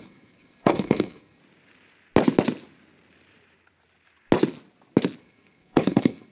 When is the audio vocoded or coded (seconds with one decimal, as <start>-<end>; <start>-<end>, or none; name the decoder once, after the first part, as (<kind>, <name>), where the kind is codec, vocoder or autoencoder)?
0.0-1.4 (codec, SNAC); 5.2-6.3